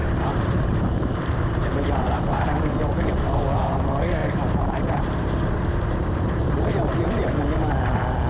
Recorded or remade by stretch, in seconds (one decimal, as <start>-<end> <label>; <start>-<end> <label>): 0.0-3.2 remade; 3.2-4.2 recorded; 4.2-7.4 remade; 7.4-8.3 recorded